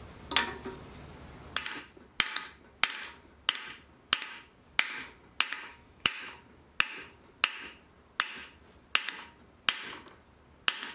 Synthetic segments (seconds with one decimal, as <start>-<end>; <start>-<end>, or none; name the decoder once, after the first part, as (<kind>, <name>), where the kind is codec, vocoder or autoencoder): 5.7-6.2 (autoencoder, DAC-VAE)